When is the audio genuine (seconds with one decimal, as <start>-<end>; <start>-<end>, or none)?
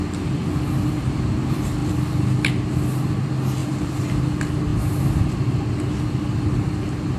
0.0-3.6; 4.2-7.2